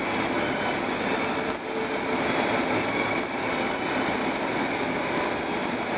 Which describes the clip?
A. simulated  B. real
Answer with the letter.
B